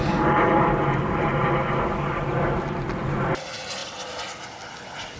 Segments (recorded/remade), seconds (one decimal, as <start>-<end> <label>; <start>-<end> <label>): 0.0-5.2 recorded